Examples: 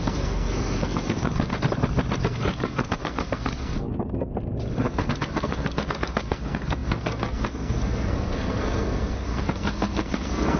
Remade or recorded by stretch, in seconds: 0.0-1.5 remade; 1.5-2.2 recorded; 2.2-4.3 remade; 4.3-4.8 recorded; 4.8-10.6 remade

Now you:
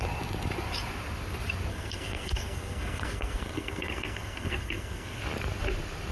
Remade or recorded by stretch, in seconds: 0.0-1.7 recorded; 1.7-5.2 remade; 5.2-6.1 recorded